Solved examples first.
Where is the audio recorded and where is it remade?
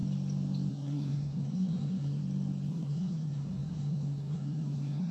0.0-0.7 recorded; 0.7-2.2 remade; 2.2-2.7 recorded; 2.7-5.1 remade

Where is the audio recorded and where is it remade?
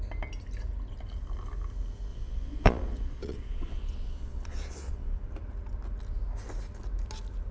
0.0-2.1 recorded; 2.1-5.2 remade; 5.2-7.5 recorded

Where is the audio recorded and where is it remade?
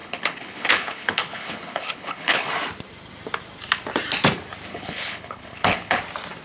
0.0-2.5 remade; 2.5-4.7 recorded; 4.7-6.0 remade; 6.0-6.4 recorded